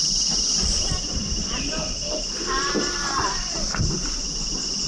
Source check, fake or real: real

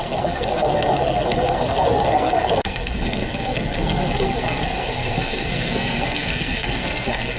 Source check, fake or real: fake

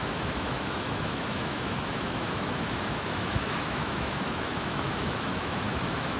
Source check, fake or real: fake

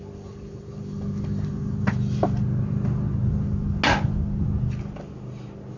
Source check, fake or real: real